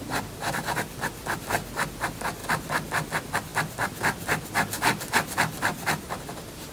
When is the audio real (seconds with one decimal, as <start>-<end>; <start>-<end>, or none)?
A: 0.0-6.7